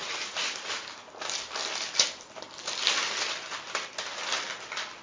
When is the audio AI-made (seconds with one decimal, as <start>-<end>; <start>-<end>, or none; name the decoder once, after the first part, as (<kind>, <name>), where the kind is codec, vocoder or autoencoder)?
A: none